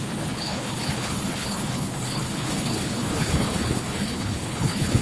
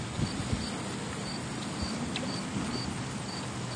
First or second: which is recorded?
second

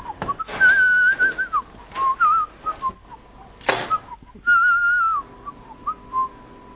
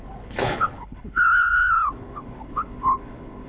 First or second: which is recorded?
first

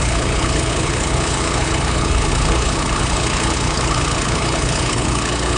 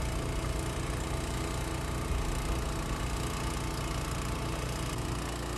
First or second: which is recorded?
second